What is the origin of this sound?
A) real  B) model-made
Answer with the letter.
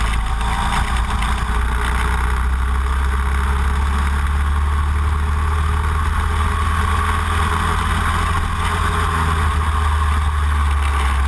A